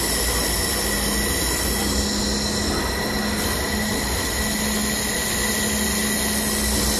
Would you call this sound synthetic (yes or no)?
no